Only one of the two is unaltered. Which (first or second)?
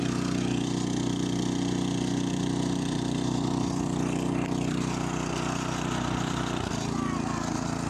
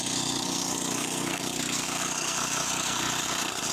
first